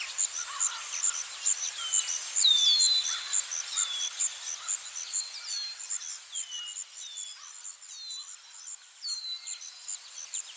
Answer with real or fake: real